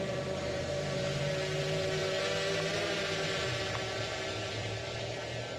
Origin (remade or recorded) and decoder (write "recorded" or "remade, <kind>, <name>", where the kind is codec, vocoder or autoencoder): remade, vocoder, BigVGAN v2